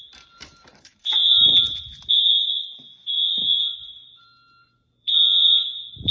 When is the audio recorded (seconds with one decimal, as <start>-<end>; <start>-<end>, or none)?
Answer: 1.5-2.1